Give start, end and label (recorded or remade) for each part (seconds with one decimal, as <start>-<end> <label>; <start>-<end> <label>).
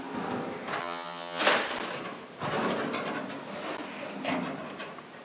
0.0-0.8 recorded; 0.8-1.4 remade; 1.4-5.2 recorded